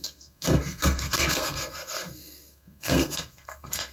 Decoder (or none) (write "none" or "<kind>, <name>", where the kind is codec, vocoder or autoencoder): codec, SNAC